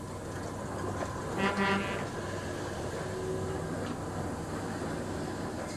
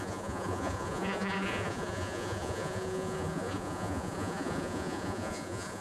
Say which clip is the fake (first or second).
second